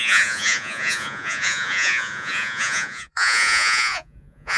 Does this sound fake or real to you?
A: fake